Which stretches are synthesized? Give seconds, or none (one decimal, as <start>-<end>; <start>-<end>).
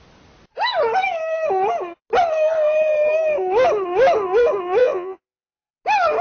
4.8-5.7